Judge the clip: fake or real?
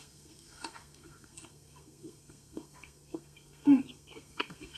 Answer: fake